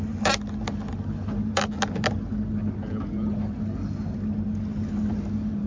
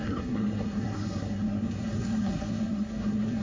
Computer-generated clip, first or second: second